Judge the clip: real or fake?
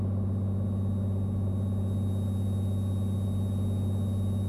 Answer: real